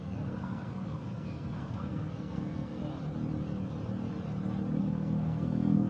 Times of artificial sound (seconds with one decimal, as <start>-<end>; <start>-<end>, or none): 0.0-2.8; 4.8-5.9